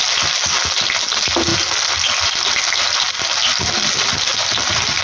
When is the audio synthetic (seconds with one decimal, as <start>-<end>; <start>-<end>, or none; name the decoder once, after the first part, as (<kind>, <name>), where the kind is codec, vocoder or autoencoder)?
none